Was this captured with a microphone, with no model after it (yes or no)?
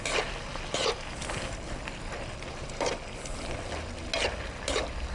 yes